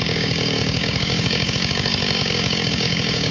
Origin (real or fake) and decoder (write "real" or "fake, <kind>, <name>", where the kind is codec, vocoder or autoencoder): fake, codec, DAC